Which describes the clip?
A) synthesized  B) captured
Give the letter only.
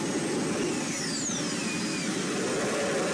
B